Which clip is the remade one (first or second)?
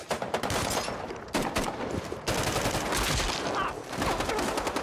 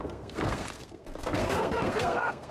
second